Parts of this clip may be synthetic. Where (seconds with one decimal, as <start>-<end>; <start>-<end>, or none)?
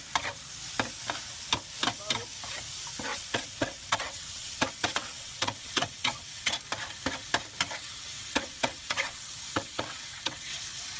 3.1-6.5; 7.8-10.6